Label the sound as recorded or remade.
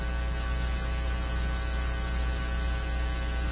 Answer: recorded